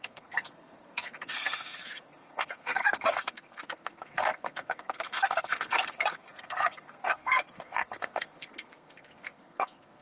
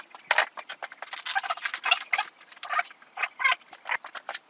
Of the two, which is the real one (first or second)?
second